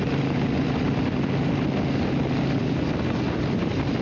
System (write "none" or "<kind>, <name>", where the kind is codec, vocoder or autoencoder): none